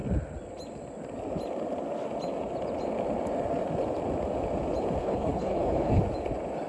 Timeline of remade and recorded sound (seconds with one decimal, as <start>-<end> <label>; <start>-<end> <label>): 0.0-5.0 recorded; 5.0-6.0 remade; 6.0-6.7 recorded

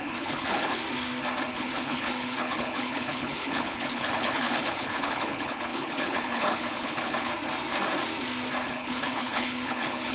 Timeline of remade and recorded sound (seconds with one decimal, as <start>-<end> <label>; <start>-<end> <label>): 0.0-0.8 remade; 0.8-1.5 recorded; 1.5-7.3 remade; 7.3-8.7 recorded; 8.7-10.1 remade

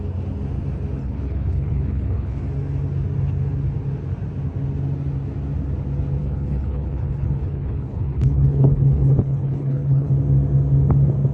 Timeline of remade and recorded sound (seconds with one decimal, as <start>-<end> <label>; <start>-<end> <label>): 0.0-1.0 recorded; 1.0-2.4 remade; 2.4-6.2 recorded; 6.2-10.1 remade; 10.1-11.3 recorded

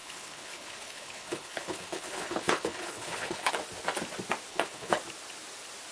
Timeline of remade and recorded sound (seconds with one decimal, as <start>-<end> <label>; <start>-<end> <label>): 0.0-3.5 remade; 3.5-4.5 recorded; 4.5-5.0 remade; 5.0-5.9 recorded

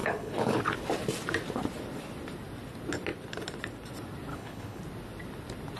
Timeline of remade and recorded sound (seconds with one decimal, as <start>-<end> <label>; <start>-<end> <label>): 0.0-0.6 remade; 0.6-4.3 recorded; 4.3-4.8 remade; 4.8-5.8 recorded